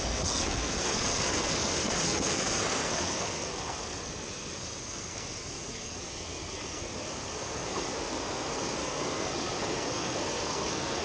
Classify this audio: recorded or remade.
remade